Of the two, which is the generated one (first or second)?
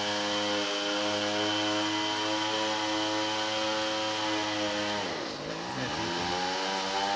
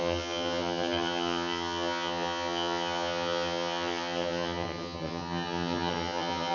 second